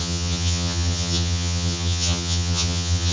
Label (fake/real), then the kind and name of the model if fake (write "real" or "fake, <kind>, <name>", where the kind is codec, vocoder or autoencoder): fake, vocoder, HiFi-GAN